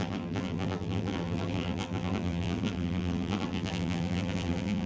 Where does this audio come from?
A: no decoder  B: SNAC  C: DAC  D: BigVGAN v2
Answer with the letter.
D